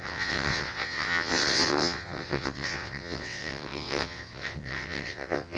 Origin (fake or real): fake